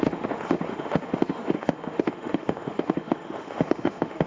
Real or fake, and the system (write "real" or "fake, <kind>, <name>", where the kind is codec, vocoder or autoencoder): fake, autoencoder, DAC-VAE